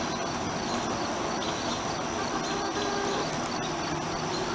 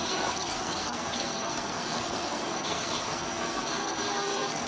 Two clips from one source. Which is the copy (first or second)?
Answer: second